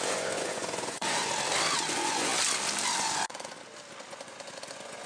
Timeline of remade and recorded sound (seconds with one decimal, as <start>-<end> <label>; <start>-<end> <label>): 0.0-1.3 remade; 1.3-1.9 recorded; 1.9-2.3 remade; 2.3-3.0 recorded; 3.0-3.5 remade; 3.5-4.1 recorded; 4.1-5.1 remade